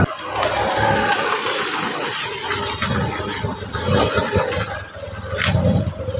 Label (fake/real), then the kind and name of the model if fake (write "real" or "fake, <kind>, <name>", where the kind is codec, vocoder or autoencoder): real